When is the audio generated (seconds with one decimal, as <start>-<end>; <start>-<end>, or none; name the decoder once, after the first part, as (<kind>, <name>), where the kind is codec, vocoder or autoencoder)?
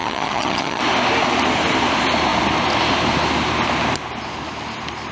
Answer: 0.0-0.8 (vocoder, HiFi-GAN)